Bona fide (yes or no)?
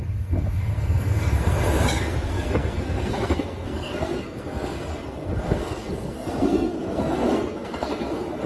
no